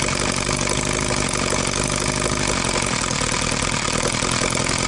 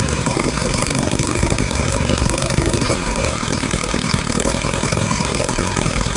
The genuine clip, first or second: first